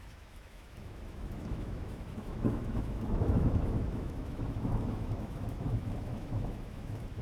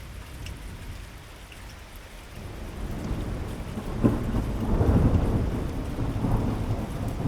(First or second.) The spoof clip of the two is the first